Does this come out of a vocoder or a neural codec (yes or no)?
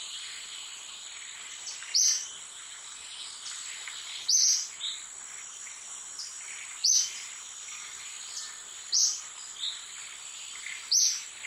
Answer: no